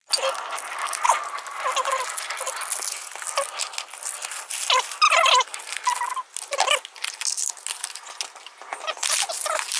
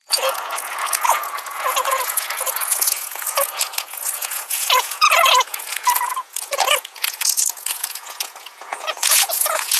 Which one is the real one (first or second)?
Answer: first